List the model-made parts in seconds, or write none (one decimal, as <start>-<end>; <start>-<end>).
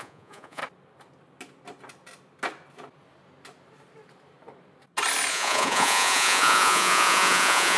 0.0-0.6; 5.3-7.8